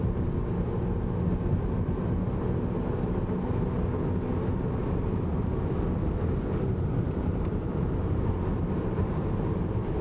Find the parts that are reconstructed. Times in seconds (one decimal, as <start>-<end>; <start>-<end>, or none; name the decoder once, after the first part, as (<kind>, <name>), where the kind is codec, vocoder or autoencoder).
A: 5.3-8.3 (vocoder, BigVGAN v2)